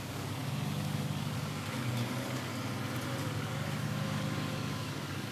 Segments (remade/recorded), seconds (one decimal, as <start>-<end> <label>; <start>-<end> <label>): 0.0-2.5 remade; 2.5-3.2 recorded; 3.2-5.3 remade